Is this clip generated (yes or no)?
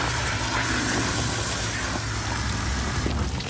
no